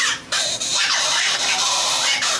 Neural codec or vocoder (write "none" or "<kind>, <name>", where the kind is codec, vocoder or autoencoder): vocoder, BigVGAN v2